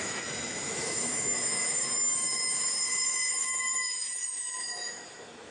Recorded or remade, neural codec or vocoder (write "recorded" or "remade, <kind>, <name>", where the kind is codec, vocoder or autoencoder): remade, autoencoder, DAC-VAE